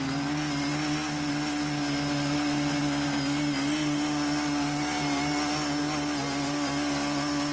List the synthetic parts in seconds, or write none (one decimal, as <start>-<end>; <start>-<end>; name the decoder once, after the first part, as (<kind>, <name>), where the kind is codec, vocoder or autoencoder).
none